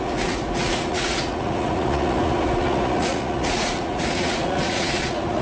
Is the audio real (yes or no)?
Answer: no